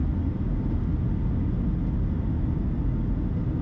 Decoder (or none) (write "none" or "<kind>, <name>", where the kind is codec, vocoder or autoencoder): none